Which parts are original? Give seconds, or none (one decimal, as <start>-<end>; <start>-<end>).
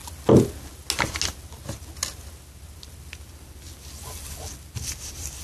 0.0-3.2